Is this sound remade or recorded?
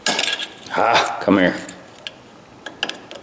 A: recorded